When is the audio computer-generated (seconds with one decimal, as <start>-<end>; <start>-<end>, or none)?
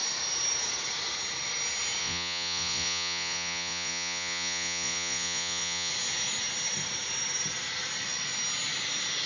2.0-5.9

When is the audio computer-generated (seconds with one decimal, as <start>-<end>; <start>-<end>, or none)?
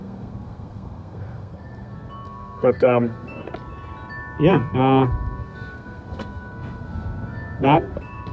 0.0-3.5; 4.5-8.3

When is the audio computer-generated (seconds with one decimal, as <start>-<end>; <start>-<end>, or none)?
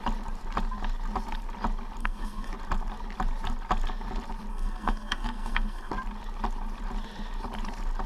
2.0-2.5; 4.5-5.9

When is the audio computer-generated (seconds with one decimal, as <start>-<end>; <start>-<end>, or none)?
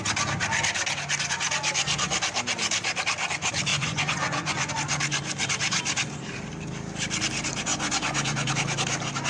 3.7-4.7; 7.7-8.5